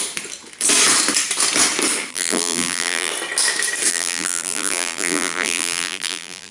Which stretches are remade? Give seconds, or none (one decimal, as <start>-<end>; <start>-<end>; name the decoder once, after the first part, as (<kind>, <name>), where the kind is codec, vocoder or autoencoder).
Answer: 2.1-3.1 (vocoder, BigVGAN v2); 3.9-6.5